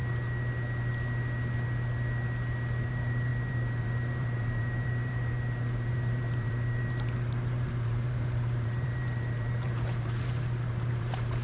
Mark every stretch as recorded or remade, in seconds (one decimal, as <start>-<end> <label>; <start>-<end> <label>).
0.0-2.9 recorded; 2.9-11.4 remade